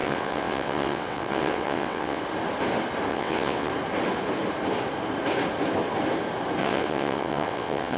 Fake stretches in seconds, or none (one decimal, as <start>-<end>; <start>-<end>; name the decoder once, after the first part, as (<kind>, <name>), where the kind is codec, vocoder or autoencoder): 0.0-2.2 (vocoder, WaveNeXt); 3.1-3.7; 6.6-8.0